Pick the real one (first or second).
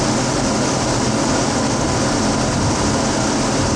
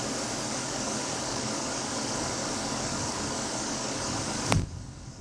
first